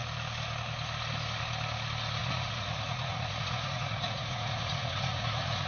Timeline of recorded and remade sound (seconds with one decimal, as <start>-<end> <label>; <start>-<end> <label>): 0.0-2.2 recorded; 2.2-5.7 remade